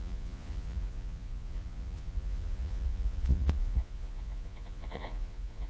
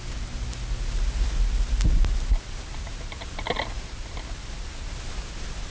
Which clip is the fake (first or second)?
first